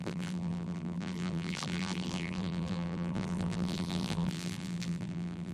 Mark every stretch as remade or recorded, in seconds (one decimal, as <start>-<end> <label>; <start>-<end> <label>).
0.0-5.5 remade